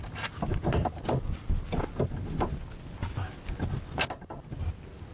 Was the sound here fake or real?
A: real